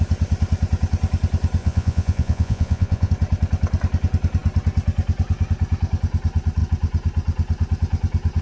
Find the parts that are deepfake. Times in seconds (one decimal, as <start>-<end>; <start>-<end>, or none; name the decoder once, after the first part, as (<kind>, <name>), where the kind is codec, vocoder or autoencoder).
1.6-3.1 (vocoder, Vocos)

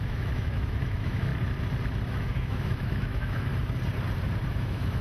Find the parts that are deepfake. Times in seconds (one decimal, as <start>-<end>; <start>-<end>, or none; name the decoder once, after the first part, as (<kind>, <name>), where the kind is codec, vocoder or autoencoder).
0.0-1.3 (autoencoder, DAC-VAE); 2.1-3.5; 4.5-5.0